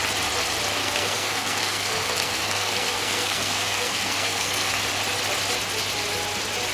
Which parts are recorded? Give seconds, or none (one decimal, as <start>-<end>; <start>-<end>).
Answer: 0.0-0.8; 4.8-6.7